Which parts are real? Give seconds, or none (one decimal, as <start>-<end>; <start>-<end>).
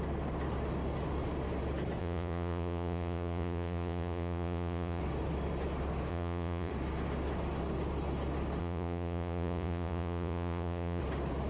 0.0-2.0; 5.0-6.1; 6.7-8.6; 11.0-11.5